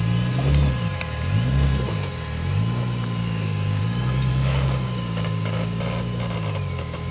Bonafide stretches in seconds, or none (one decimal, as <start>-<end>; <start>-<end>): 0.0-3.2; 3.8-4.3; 5.8-7.1